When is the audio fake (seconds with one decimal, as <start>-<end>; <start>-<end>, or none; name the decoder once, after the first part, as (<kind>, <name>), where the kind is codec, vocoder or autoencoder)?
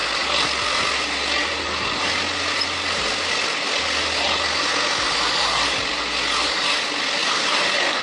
none